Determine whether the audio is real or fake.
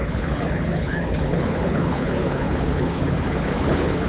fake